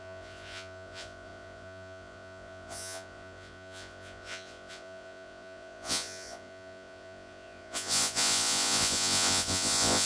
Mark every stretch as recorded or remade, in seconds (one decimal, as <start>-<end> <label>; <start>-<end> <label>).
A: 0.0-10.1 remade